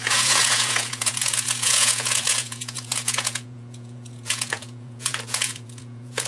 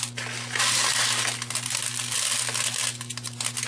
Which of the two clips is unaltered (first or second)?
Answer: second